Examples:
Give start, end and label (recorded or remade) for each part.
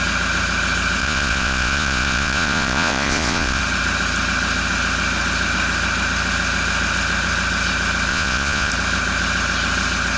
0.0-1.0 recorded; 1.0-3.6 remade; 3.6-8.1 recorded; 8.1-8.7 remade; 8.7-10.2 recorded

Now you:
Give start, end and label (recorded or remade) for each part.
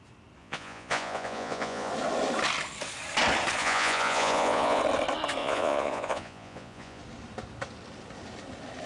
0.0-0.4 recorded; 0.4-1.9 remade; 1.9-3.6 recorded; 3.6-4.8 remade; 4.8-5.4 recorded; 5.4-7.0 remade; 7.0-8.9 recorded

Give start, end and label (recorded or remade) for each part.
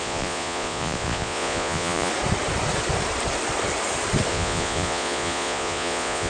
0.0-2.1 remade; 2.1-4.3 recorded; 4.3-6.3 remade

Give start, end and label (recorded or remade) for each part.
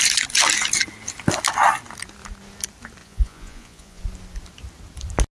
0.0-3.0 recorded; 3.0-4.0 remade; 4.0-5.3 recorded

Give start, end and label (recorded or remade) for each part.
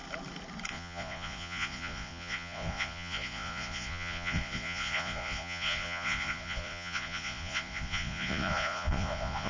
0.0-0.7 recorded; 0.7-9.5 remade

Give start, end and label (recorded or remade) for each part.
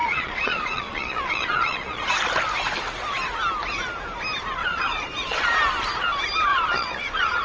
0.0-2.1 remade; 2.1-4.6 recorded; 4.6-5.1 remade; 5.1-6.5 recorded; 6.5-7.4 remade